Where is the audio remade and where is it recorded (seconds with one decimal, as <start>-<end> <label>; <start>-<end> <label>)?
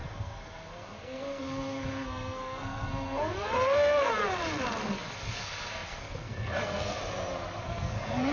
0.0-4.1 remade; 4.1-4.8 recorded; 4.8-7.0 remade; 7.0-7.6 recorded; 7.6-8.3 remade